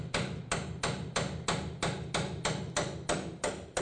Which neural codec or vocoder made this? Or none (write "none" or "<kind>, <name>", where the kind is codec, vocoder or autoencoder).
none